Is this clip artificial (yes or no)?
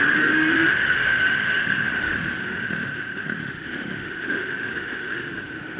yes